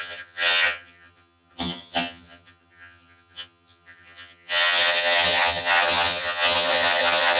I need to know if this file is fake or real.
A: fake